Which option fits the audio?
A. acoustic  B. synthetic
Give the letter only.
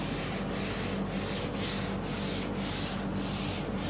A